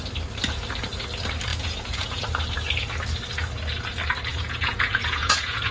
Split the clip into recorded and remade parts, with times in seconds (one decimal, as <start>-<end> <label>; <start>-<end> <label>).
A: 0.0-1.5 recorded; 1.5-2.2 remade; 2.2-4.3 recorded; 4.3-5.7 remade

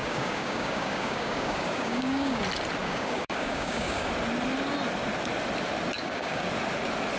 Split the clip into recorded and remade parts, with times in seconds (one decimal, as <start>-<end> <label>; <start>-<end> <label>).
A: 0.0-2.4 remade; 2.4-2.8 recorded; 2.8-4.1 remade; 4.1-6.0 recorded; 6.0-6.5 remade; 6.5-7.2 recorded

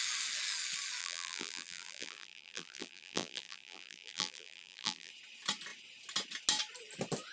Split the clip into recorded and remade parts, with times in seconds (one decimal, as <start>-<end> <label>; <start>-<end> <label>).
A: 0.0-1.0 recorded; 1.0-5.1 remade; 5.1-7.3 recorded

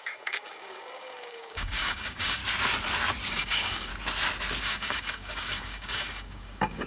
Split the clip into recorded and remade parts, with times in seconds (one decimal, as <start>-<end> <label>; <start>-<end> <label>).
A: 0.0-2.4 remade; 2.4-3.3 recorded; 3.3-3.9 remade; 3.9-4.6 recorded; 4.6-6.9 remade

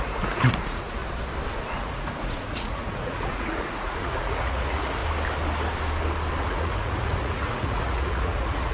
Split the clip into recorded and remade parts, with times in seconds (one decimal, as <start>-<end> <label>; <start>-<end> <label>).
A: 0.0-1.0 remade; 1.0-1.6 recorded; 1.6-5.0 remade; 5.0-6.4 recorded; 6.4-8.7 remade

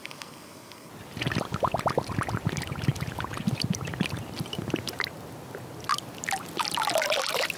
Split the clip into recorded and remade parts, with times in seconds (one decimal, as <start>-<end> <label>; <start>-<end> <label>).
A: 0.0-0.9 remade; 0.9-7.6 recorded

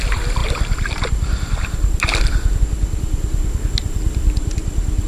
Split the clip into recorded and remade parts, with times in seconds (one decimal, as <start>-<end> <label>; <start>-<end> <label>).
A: 0.0-0.4 recorded; 0.4-2.6 remade; 2.6-3.8 recorded; 3.8-5.1 remade